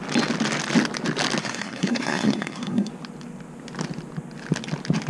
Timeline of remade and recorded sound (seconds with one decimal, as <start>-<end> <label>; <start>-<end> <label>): 0.0-1.4 recorded; 1.4-2.9 remade; 2.9-5.1 recorded